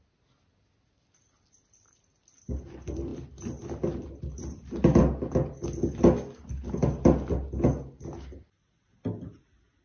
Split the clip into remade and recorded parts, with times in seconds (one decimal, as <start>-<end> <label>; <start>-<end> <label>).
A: 0.0-9.8 recorded